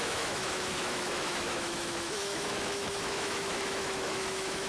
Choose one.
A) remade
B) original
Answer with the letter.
A